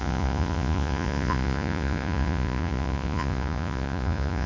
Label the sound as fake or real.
fake